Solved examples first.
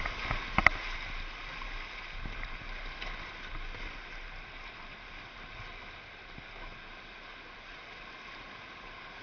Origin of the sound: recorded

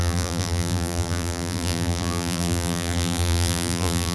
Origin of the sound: remade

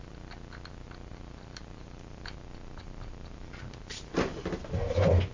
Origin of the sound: recorded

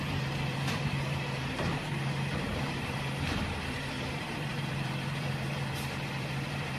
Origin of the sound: remade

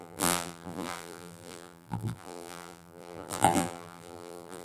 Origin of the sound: remade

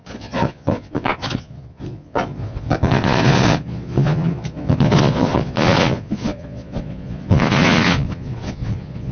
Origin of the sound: remade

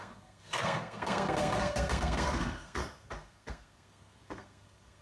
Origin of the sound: remade